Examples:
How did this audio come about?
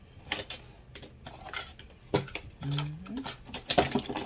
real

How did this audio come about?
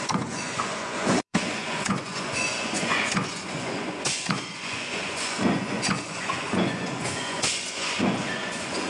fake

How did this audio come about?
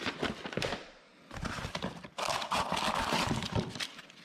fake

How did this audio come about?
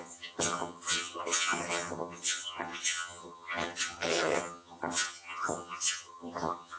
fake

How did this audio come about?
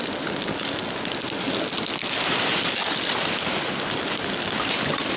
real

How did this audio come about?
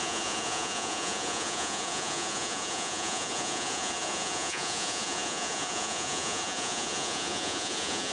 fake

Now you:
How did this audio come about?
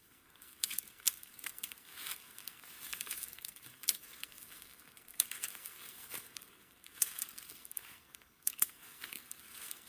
fake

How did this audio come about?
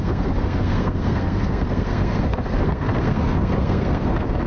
fake